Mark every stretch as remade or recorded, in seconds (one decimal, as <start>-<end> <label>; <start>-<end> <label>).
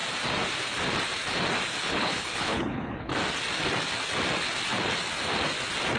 0.0-1.9 recorded; 1.9-3.1 remade; 3.1-6.0 recorded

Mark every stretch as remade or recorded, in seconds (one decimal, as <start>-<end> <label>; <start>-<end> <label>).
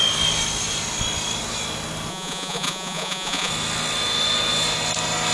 0.0-2.1 recorded; 2.1-3.5 remade; 3.5-5.3 recorded